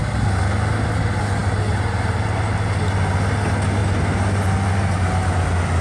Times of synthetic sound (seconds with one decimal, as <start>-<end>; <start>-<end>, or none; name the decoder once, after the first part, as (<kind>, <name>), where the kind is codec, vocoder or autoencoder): none